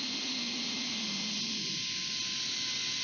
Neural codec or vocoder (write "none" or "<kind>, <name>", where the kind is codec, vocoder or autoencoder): none